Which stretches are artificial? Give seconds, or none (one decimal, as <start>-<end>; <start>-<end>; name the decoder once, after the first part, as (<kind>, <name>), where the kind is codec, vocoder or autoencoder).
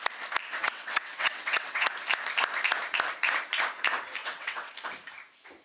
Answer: 0.6-1.9 (vocoder, WaveNeXt); 4.2-4.7